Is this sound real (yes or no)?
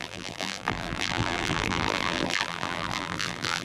no